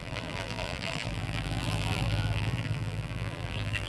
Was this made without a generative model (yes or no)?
no